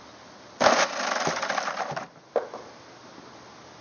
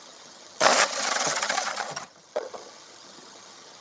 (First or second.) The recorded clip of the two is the first